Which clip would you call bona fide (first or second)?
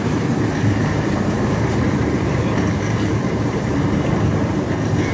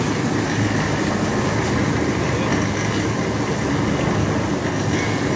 second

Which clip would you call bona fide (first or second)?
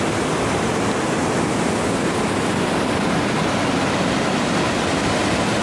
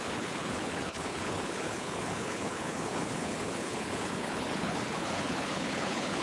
first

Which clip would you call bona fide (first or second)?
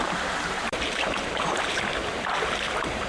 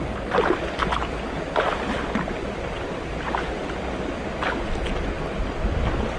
second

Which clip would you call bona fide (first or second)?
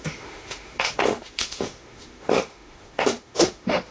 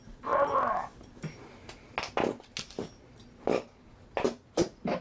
second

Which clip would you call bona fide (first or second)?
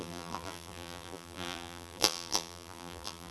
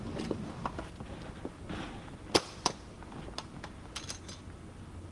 second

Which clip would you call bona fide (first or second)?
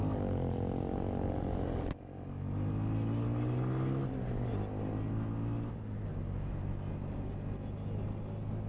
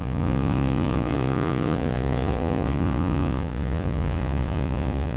first